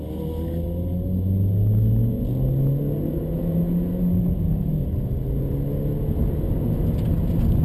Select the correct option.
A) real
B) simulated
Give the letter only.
A